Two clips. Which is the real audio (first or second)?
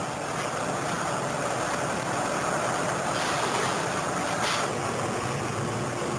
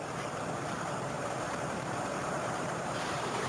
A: first